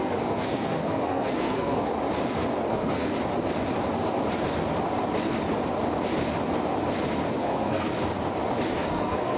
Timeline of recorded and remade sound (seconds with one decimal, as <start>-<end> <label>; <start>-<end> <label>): 0.0-1.9 remade; 1.9-2.7 recorded; 2.7-3.1 remade; 3.1-7.3 recorded; 7.3-7.9 remade; 7.9-8.9 recorded; 8.9-9.4 remade